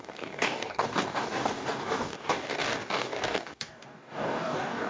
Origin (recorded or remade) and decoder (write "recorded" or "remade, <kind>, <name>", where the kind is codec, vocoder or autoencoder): remade, codec, DAC